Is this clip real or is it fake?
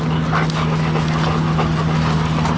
real